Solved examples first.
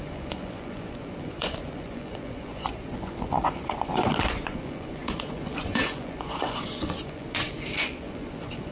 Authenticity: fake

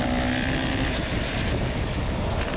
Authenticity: real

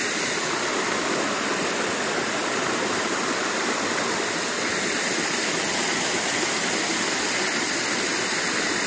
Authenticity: real